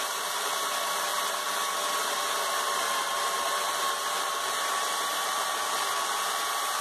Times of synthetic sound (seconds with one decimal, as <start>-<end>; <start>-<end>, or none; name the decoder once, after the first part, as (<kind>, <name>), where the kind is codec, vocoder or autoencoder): 0.0-6.8 (vocoder, BigVGAN v2)